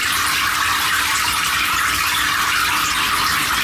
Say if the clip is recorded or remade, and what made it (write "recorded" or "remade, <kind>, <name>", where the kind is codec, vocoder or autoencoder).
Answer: remade, vocoder, BigVGAN v2